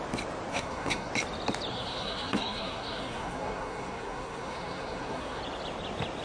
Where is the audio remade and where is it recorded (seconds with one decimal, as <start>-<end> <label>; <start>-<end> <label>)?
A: 0.0-0.5 recorded; 0.5-1.1 remade; 1.1-1.7 recorded; 1.7-5.4 remade; 5.4-6.2 recorded